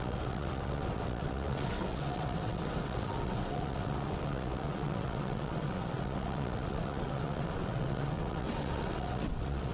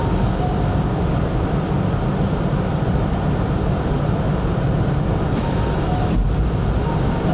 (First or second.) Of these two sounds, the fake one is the first